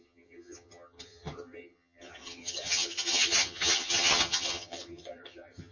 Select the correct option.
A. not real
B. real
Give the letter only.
A